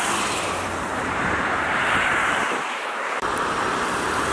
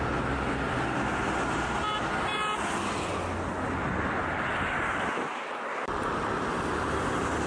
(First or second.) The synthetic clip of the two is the first